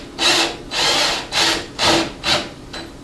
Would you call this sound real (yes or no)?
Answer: yes